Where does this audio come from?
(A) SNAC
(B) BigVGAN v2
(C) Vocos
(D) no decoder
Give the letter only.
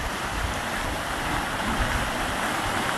D